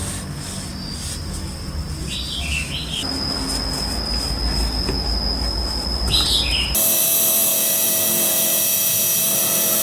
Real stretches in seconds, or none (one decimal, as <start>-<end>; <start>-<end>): 0.0-7.5; 8.0-9.8